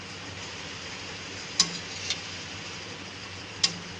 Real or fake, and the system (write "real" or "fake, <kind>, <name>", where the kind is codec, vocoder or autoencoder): real